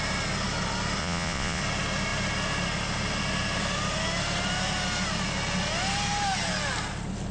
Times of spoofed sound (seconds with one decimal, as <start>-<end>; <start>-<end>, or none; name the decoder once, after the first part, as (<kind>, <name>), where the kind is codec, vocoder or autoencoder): 1.0-1.6 (vocoder, Vocos)